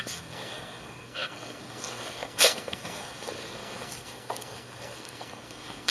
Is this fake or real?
fake